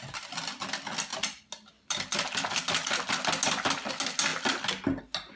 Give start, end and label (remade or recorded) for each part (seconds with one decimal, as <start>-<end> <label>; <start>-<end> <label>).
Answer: 0.0-5.4 recorded